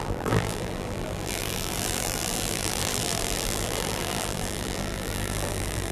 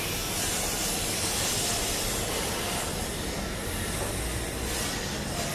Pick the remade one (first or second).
first